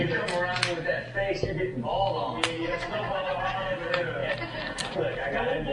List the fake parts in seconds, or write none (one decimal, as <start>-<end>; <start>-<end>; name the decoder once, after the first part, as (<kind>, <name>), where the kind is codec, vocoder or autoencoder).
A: 2.6-3.4 (vocoder, Vocos)